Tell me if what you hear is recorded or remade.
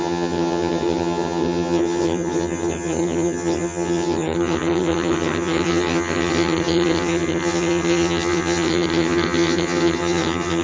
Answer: remade